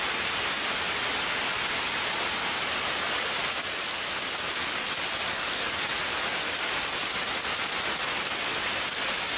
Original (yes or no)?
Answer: yes